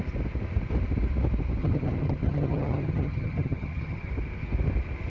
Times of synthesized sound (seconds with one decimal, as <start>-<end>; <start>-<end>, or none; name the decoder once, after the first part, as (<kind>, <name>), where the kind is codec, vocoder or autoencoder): 1.6-4.1 (vocoder, HiFi-GAN)